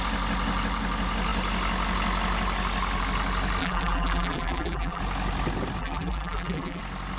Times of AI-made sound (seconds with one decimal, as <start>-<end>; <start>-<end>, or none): 3.6-5.0; 5.8-6.8

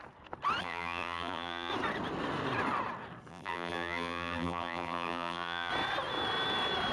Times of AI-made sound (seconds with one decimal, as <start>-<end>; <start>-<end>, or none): 0.6-1.7; 3.3-5.7

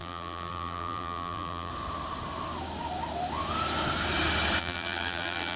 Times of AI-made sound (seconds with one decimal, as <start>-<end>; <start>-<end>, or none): 0.0-1.7; 4.6-5.6

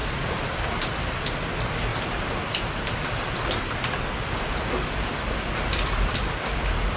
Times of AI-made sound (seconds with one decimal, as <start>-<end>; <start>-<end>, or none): 0.0-0.6; 1.9-4.7

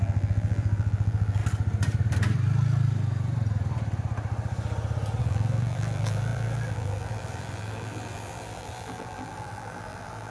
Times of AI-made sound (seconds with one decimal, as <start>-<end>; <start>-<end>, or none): 0.0-1.4; 5.2-10.3

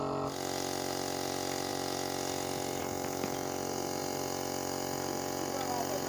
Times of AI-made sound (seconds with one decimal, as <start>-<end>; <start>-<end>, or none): none

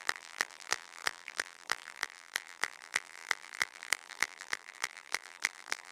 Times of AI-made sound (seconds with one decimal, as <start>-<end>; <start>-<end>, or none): 0.0-5.9